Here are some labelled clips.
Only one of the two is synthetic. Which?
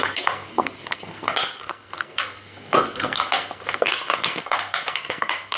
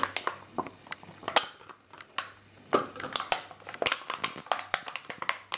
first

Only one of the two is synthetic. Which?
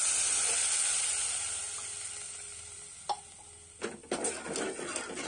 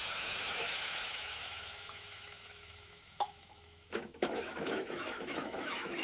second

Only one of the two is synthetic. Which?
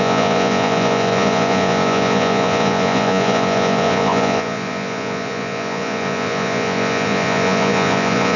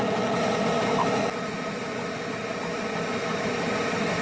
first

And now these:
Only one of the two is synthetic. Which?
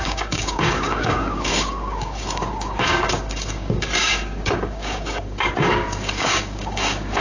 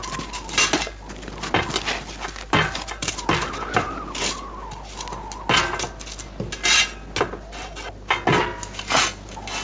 first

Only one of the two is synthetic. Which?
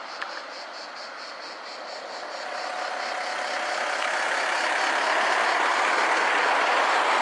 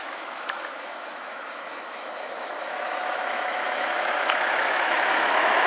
second